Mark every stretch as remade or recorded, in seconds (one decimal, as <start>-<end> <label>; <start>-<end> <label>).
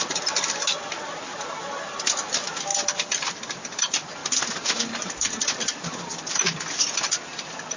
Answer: 0.0-2.7 recorded; 2.7-3.3 remade; 3.3-4.2 recorded; 4.2-4.9 remade; 4.9-7.8 recorded